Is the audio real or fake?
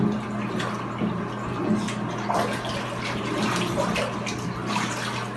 real